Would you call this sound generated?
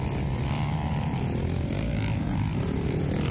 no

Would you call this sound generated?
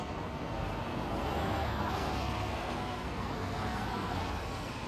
yes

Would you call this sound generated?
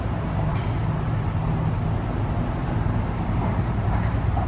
no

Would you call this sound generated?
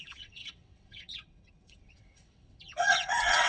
yes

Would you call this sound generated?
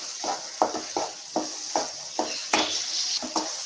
no